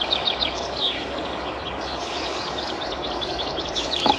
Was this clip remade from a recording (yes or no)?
yes